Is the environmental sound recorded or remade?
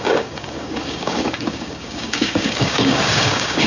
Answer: remade